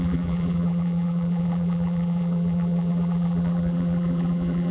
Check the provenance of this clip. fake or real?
fake